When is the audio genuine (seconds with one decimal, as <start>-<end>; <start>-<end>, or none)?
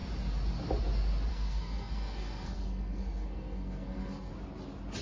0.0-1.3; 4.3-5.0